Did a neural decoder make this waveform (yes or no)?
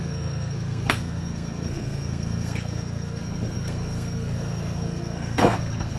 yes